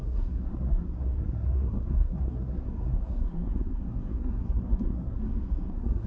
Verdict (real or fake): fake